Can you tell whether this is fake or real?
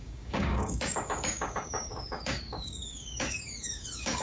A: fake